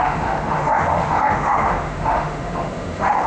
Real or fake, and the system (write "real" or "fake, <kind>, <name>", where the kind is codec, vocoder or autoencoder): fake, autoencoder, DAC-VAE